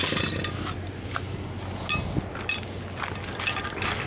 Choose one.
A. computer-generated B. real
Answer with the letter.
B